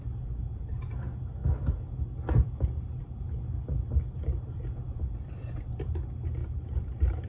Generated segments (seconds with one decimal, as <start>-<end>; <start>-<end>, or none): 6.4-7.3